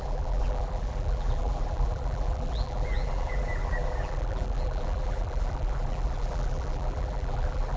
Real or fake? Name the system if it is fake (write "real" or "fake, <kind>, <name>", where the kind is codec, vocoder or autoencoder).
fake, vocoder, BigVGAN v2